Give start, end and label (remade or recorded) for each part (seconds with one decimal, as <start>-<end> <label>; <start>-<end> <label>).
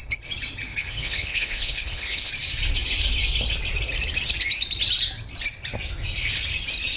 0.0-0.7 recorded; 0.7-2.3 remade; 2.3-7.0 recorded